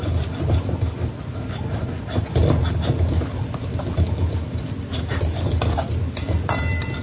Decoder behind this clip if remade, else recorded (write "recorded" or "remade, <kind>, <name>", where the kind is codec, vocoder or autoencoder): recorded